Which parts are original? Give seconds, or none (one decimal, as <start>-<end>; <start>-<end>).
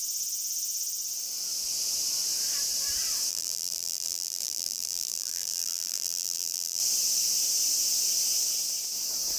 0.0-3.3; 6.8-9.4